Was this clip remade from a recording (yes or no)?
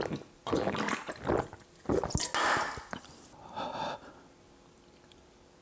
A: no